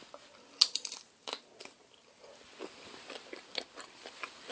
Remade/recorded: recorded